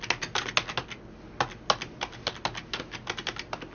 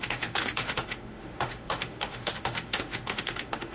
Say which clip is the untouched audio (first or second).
first